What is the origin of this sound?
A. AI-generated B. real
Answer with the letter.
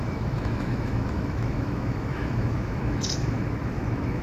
A